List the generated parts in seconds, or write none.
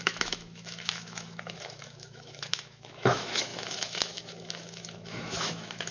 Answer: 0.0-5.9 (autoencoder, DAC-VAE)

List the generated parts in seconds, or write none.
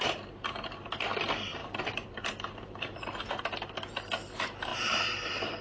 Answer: 1.6-3.3 (vocoder, BigVGAN v2)